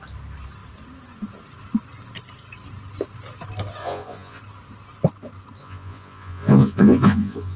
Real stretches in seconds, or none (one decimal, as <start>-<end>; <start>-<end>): 0.0-3.8; 4.4-5.6